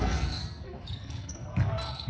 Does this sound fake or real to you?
fake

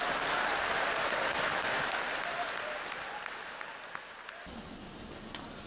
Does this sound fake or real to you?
real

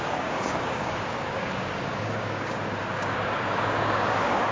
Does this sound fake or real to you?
fake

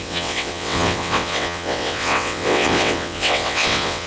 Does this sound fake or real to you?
fake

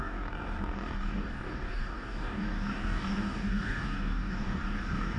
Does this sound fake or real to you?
fake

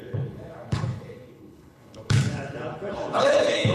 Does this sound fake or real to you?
fake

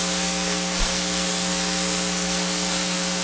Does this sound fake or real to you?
fake